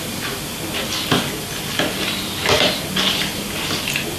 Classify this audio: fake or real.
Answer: real